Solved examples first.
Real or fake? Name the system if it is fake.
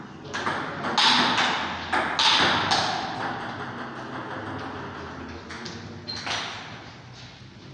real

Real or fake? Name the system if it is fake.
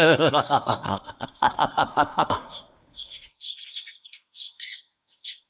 fake, codec, SNAC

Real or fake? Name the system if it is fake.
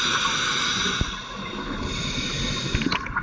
real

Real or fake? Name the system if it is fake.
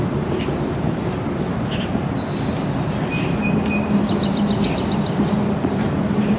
real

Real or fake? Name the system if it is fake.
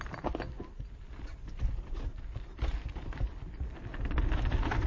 real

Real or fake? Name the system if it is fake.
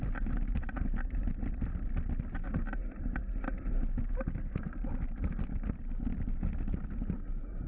real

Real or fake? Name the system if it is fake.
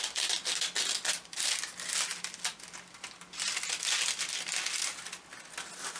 real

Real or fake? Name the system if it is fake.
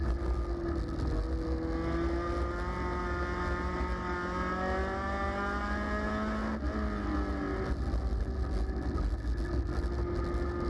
real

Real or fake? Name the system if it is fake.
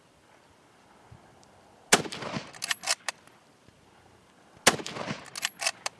real